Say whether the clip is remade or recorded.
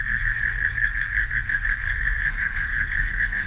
remade